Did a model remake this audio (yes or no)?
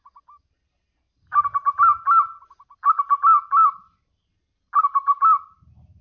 no